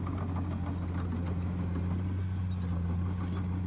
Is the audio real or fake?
real